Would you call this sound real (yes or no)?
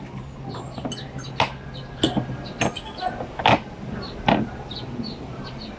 yes